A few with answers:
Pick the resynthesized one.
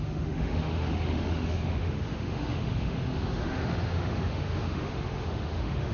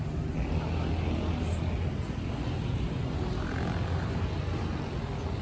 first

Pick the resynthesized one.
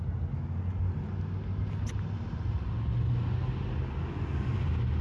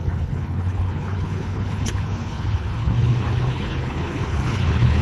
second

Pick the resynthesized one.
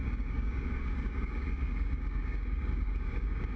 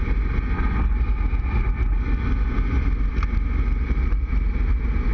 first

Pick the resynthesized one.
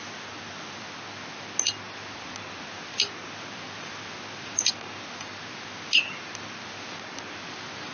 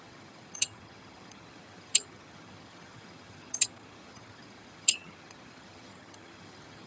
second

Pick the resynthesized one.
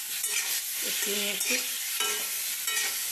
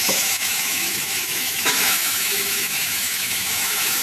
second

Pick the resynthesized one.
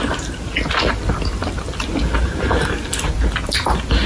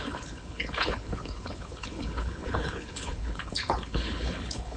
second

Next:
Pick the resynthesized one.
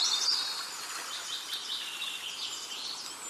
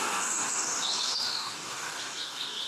second